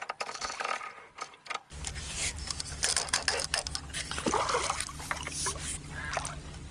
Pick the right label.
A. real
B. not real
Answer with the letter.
A